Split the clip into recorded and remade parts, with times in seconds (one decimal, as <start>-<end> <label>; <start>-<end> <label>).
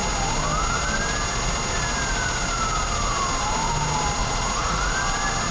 0.0-4.2 recorded; 4.2-4.9 remade; 4.9-5.5 recorded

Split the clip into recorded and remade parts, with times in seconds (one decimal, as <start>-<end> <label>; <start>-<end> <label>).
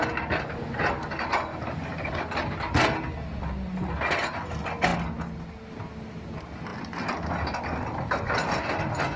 0.0-1.5 recorded; 1.5-2.2 remade; 2.2-9.2 recorded